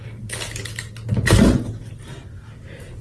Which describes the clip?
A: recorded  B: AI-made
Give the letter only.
A